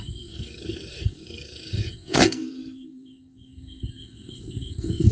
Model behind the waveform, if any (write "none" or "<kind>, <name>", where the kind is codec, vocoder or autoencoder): codec, SNAC